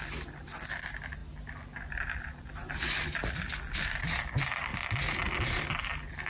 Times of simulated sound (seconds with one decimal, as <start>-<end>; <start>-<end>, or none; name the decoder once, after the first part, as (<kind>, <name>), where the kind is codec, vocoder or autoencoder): none